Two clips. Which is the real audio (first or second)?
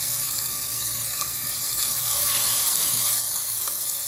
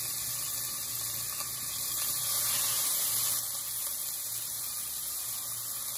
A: second